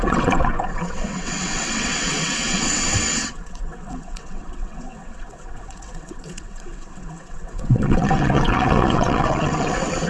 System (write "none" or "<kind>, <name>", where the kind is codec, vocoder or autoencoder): vocoder, WaveNeXt